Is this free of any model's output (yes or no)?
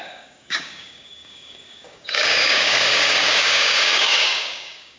no